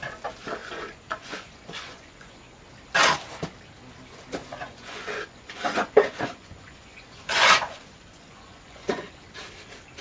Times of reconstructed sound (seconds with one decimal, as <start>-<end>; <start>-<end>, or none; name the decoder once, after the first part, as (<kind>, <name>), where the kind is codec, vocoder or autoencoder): 0.6-2.6 (vocoder, Vocos); 4.4-9.1